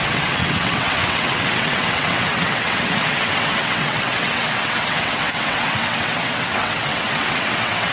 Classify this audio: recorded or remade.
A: remade